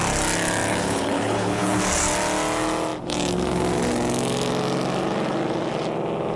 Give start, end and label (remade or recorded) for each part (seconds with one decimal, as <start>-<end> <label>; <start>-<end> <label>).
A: 0.0-0.7 recorded; 0.7-1.8 remade; 1.8-6.4 recorded